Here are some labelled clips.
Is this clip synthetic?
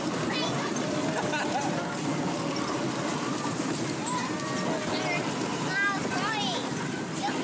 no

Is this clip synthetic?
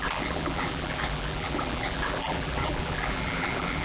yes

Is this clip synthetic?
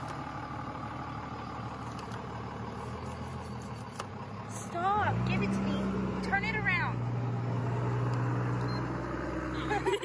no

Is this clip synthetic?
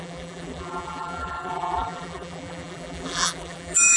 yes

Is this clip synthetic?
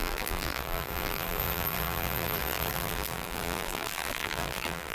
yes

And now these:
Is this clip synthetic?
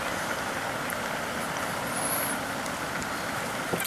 no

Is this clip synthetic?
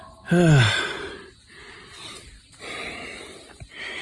no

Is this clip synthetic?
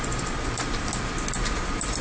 yes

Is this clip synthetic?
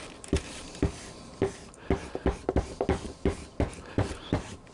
yes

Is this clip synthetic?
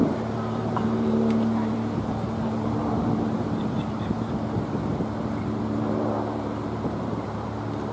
yes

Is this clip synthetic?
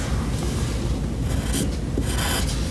no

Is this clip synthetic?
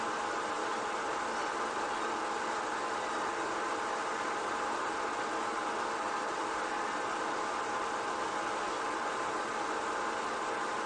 no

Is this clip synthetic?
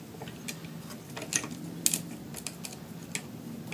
no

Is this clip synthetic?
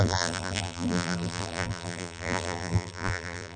yes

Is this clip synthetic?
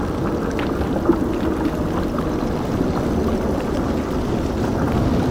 no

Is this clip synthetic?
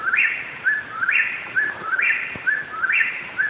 no